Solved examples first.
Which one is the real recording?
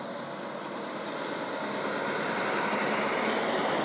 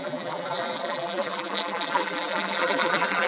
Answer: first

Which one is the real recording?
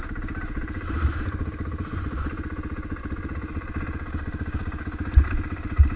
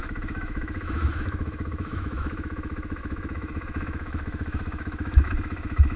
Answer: first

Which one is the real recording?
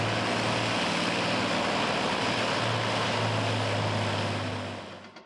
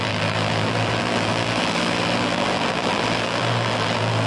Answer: first